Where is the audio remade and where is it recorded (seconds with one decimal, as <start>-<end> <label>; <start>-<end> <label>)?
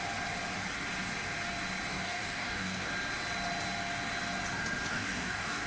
0.0-1.9 recorded; 1.9-2.9 remade; 2.9-4.9 recorded; 4.9-5.7 remade